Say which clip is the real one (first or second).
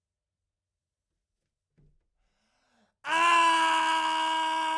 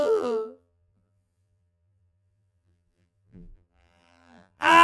first